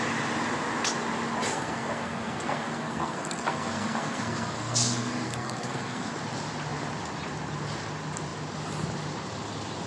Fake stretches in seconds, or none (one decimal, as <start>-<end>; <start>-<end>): 1.5-6.1